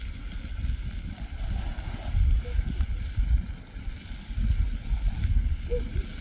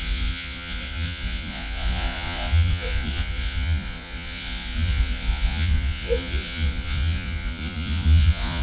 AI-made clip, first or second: second